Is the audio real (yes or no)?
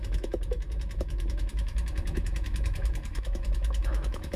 no